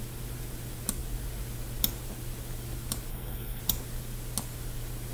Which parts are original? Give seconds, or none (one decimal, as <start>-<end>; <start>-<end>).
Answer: 0.0-3.1; 3.6-5.1